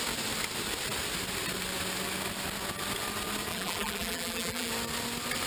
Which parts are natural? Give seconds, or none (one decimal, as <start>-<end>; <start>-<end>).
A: 0.0-3.5; 4.7-5.5